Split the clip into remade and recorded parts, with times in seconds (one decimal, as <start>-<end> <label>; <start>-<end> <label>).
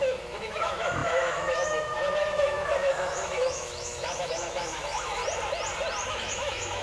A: 0.0-5.2 remade; 5.2-6.1 recorded; 6.1-6.8 remade